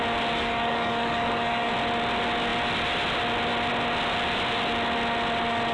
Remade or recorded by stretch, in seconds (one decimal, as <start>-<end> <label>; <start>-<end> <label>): 0.0-0.4 recorded; 0.4-1.7 remade; 1.7-5.7 recorded